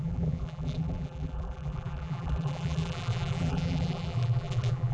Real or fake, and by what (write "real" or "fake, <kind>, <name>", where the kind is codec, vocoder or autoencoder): fake, vocoder, BigVGAN v2